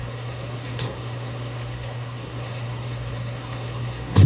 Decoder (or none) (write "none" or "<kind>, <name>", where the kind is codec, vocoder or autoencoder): codec, SNAC